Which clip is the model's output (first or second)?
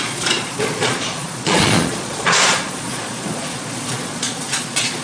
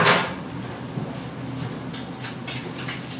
first